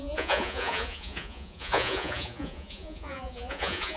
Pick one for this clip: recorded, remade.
remade